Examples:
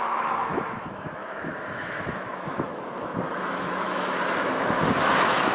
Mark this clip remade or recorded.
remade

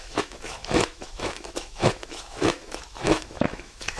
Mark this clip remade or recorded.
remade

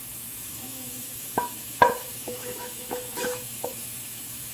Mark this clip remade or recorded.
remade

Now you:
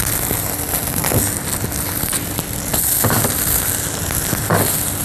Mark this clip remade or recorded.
recorded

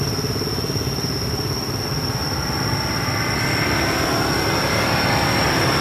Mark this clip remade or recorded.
recorded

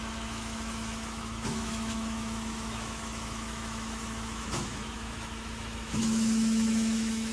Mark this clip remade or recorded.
remade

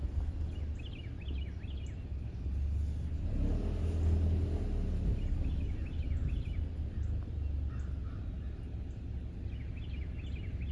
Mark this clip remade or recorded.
recorded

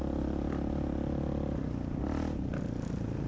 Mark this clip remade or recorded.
recorded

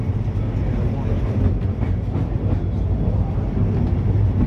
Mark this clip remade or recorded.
recorded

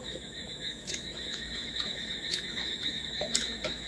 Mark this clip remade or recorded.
remade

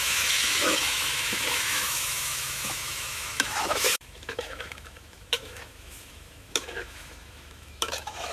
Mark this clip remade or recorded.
remade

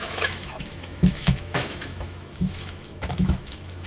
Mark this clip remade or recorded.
remade